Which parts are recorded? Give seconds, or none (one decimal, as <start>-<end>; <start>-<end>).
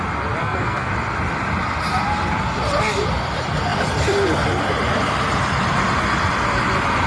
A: 0.0-0.4; 0.9-7.1